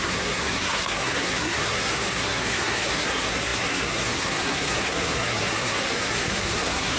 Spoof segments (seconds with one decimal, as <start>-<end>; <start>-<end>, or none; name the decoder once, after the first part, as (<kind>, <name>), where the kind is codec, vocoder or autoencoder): 0.0-7.0 (codec, SNAC)